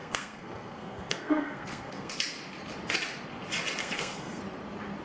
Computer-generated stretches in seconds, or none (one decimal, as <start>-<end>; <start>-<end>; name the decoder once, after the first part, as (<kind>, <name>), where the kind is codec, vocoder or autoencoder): 0.0-2.1 (codec, SNAC); 3.8-4.4